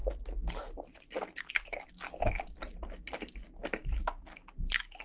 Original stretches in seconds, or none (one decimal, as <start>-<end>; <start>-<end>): 0.0-5.0